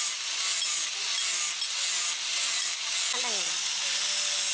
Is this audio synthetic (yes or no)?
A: no